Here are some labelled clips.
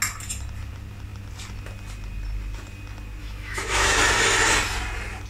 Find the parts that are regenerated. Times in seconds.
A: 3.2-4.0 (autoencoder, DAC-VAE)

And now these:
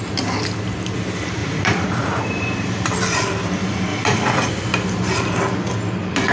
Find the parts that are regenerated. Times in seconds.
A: 1.4-2.2 (vocoder, Vocos); 3.9-4.5

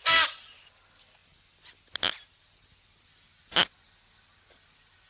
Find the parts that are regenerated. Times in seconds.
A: none

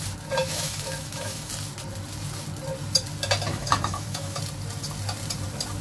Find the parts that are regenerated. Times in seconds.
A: 0.4-1.5 (autoencoder, DAC-VAE); 3.5-4.4

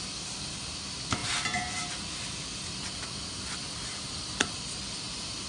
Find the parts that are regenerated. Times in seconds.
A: 0.0-1.2 (vocoder, BigVGAN v2); 1.9-3.6

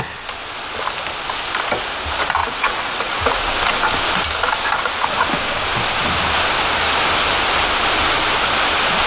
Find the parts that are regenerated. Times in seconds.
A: 2.4-3.5 (vocoder, Vocos)

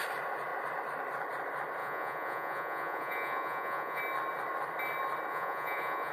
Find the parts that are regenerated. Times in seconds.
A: 1.8-4.0 (vocoder, Vocos); 5.3-6.1